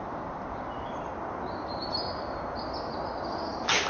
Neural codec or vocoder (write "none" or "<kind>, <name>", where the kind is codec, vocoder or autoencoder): none